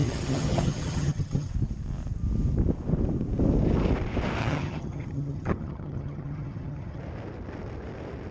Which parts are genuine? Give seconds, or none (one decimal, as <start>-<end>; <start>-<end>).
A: 1.5-4.4; 7.0-8.3

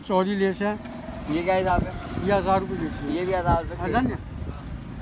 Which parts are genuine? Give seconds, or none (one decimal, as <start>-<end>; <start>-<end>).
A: 0.0-5.0

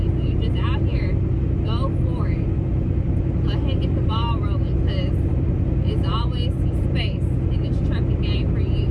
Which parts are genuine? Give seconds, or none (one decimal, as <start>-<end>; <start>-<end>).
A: 0.0-8.9

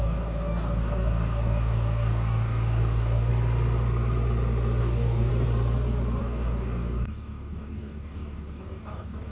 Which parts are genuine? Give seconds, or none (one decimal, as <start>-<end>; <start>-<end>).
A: 3.3-4.8; 5.3-6.2

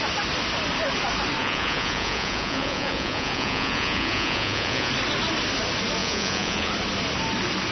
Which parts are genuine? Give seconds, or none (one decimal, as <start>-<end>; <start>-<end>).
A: 0.0-1.4; 4.9-6.0; 6.7-7.7